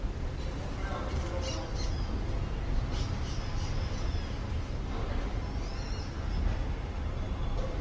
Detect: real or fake real